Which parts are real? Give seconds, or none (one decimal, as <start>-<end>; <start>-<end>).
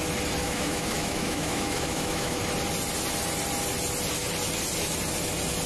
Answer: 0.0-0.4; 2.4-5.7